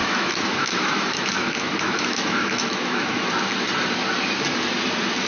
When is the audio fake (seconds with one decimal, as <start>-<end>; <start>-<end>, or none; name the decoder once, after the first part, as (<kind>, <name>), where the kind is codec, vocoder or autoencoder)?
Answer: 0.0-3.2 (autoencoder, DAC-VAE)